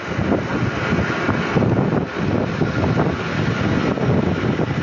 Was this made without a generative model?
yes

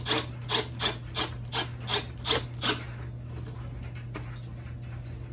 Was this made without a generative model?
yes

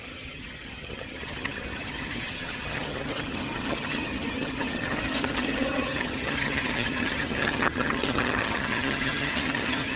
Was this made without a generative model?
no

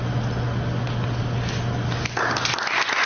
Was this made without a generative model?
yes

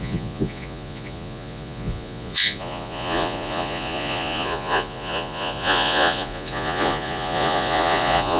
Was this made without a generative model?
no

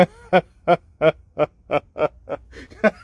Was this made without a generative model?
yes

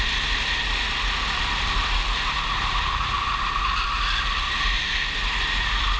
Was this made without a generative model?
yes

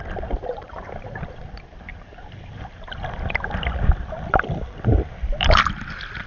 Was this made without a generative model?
no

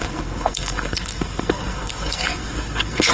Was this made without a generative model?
no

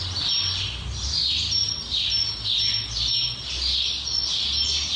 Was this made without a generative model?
yes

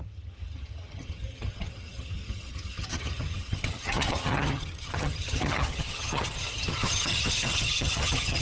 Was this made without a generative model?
no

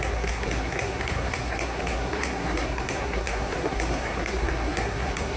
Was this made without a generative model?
no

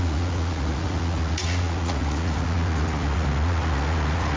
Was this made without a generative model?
no